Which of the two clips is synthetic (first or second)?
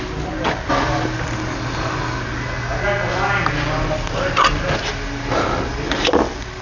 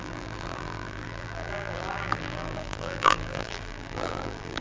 second